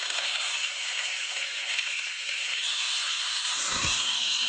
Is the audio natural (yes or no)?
no